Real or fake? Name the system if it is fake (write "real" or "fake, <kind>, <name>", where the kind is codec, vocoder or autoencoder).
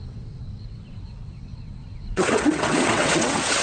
fake, vocoder, WaveNeXt